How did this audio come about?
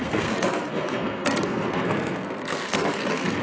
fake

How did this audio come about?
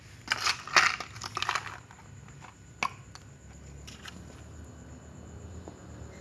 real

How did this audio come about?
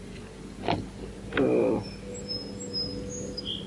real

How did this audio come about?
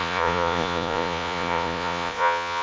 fake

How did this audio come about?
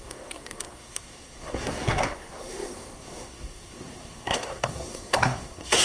fake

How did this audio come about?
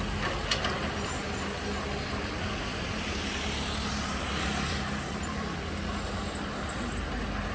real